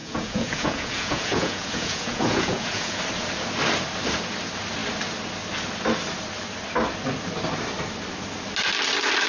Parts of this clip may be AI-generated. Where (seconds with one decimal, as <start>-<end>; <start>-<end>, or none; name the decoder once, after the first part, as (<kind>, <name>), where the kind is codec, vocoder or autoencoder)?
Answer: 0.0-3.0 (vocoder, Vocos)